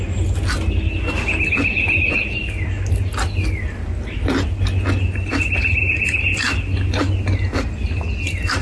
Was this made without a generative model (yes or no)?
yes